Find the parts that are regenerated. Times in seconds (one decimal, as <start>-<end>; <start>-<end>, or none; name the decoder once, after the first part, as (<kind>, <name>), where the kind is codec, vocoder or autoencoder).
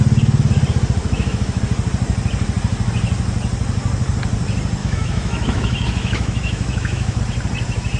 1.0-1.6 (autoencoder, DAC-VAE); 4.8-7.2